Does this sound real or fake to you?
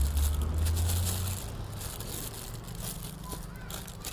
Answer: real